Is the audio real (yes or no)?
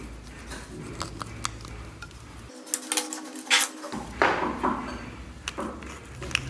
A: yes